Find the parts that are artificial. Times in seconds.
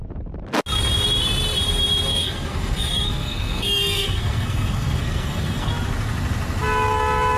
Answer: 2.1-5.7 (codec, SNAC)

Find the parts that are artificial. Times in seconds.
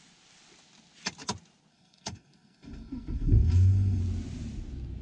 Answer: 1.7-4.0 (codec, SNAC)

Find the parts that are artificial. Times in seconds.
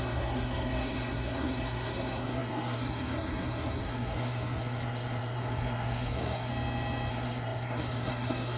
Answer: 0.0-6.5 (codec, SNAC); 7.1-8.6